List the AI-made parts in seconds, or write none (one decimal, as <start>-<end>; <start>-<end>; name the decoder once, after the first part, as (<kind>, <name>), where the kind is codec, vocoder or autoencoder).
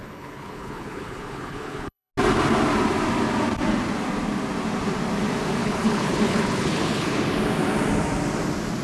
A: 0.0-2.1 (codec, HILCodec); 5.6-7.2